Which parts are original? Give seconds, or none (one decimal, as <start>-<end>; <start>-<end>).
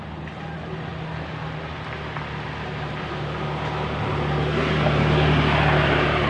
0.0-6.3